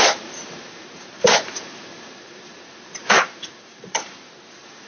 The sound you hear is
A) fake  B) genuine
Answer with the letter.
A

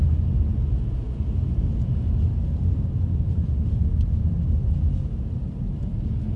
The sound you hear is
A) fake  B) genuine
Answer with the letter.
B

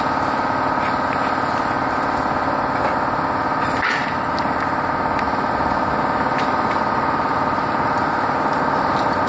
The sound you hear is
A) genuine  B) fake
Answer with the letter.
A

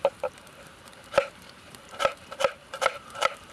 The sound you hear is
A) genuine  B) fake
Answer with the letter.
B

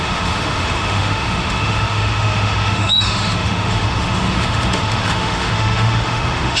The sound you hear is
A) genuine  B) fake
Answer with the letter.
B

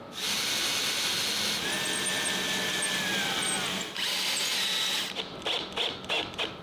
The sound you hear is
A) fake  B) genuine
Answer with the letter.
B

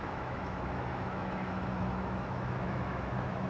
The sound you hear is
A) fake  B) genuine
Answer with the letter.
A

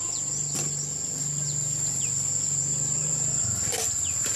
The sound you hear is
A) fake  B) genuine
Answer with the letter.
B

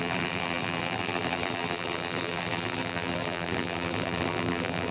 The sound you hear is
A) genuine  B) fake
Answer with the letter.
B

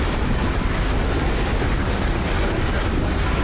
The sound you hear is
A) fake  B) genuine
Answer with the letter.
B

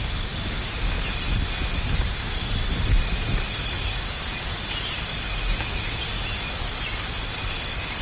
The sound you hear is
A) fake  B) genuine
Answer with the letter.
B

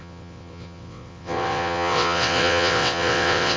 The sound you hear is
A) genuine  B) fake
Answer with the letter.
B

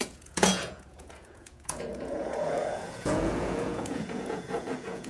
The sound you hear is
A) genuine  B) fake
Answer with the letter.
B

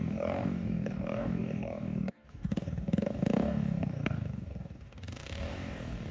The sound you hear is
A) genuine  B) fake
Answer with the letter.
B